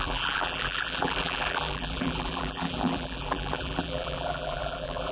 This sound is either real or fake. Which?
fake